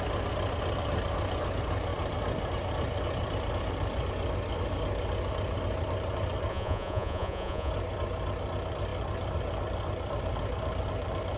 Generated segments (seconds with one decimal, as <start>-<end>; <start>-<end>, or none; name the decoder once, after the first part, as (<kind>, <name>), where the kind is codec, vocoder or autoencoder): 6.5-7.7 (vocoder, Vocos)